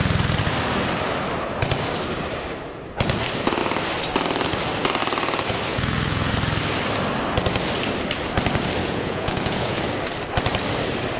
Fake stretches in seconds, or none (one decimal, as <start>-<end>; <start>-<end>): 5.7-6.3; 8.8-9.8